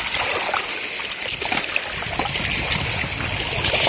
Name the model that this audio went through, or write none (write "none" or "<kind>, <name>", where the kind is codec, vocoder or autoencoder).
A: none